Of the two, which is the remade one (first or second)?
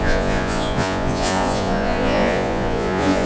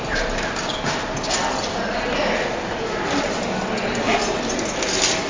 first